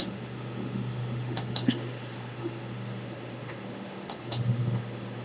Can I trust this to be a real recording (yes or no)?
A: no